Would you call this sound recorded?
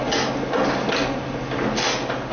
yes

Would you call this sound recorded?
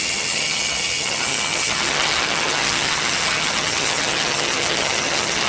no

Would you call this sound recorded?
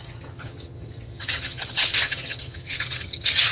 no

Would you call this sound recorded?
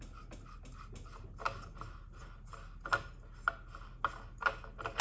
yes